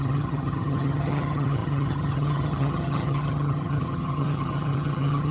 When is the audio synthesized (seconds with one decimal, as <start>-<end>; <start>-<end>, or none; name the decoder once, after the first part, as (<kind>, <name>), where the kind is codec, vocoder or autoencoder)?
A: 0.0-5.3 (vocoder, HiFi-GAN)